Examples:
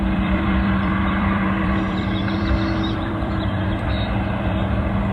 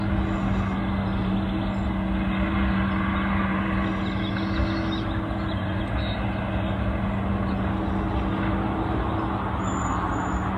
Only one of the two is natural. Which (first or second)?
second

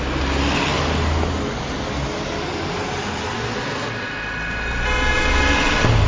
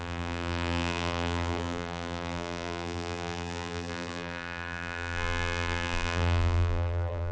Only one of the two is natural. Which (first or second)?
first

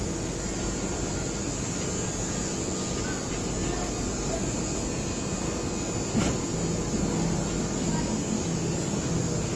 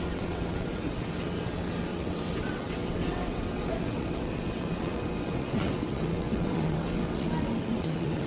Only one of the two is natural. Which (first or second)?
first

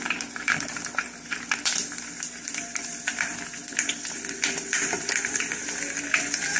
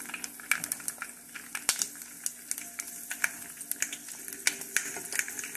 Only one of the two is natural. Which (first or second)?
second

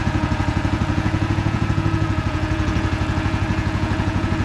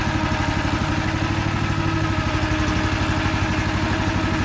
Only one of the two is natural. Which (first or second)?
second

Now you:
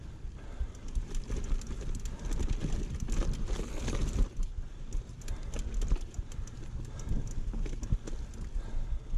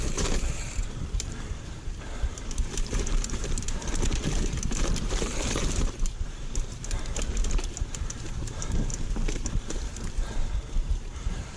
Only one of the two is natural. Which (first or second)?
first